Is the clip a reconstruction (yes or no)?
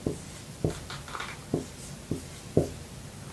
no